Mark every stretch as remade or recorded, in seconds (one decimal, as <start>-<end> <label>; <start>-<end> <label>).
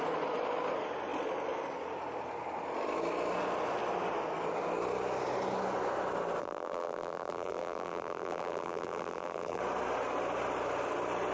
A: 0.0-6.4 recorded; 6.4-9.6 remade; 9.6-11.3 recorded